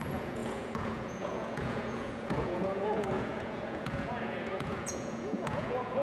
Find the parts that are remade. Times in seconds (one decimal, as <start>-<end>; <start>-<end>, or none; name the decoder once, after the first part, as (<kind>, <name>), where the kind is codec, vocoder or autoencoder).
0.0-6.0 (vocoder, Vocos)